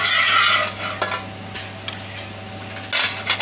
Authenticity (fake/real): real